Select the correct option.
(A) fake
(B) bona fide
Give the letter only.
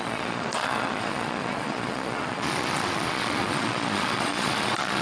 A